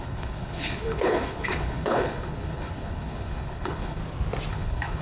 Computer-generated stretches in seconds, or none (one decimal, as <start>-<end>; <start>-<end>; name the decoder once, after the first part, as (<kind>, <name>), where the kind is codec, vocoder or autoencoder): 0.0-4.0 (codec, HILCodec); 4.5-5.0